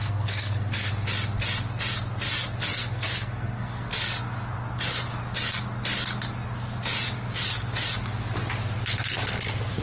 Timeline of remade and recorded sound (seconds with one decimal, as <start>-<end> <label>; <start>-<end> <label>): 0.0-0.9 remade; 0.9-2.7 recorded; 2.7-3.9 remade; 3.9-9.8 recorded